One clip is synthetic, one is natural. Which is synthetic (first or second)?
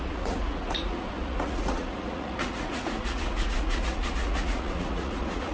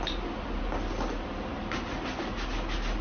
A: first